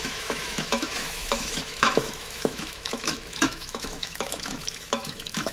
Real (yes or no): no